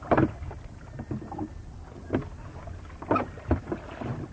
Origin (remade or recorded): recorded